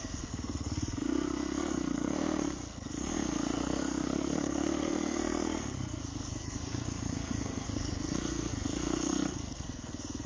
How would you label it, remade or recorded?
remade